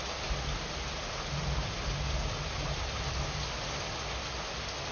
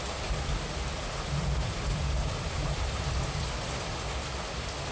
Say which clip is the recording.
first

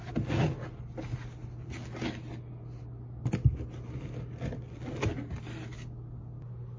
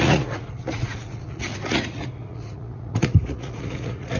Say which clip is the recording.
first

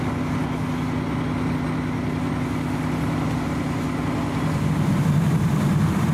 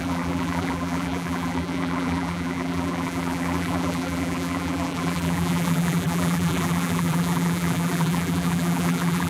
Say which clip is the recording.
first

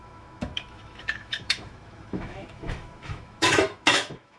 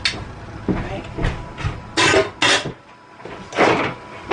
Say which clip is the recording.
second